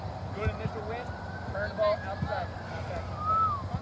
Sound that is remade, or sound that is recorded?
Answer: recorded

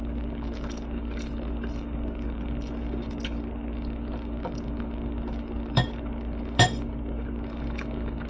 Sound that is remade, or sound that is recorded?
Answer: remade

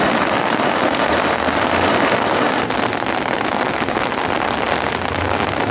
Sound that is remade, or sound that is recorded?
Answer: recorded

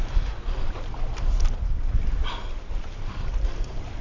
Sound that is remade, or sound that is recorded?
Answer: recorded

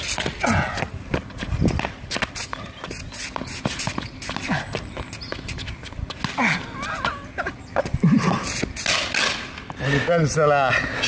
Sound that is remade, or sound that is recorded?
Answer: recorded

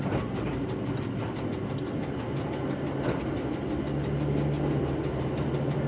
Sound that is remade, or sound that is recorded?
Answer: recorded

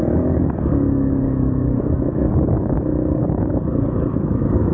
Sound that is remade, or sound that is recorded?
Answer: remade